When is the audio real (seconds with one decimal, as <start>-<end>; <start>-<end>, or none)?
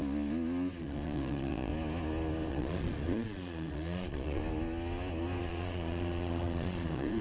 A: 0.0-0.8; 1.7-2.5; 4.4-5.4